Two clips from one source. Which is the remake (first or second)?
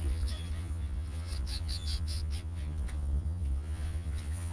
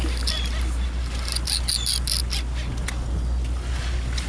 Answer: first